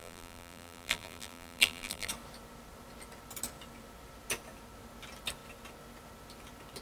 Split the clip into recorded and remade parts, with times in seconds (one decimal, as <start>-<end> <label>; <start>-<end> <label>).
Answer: 0.0-2.1 remade; 2.1-6.8 recorded